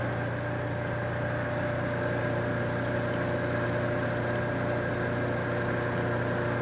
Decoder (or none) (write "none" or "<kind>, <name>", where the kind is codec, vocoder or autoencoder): none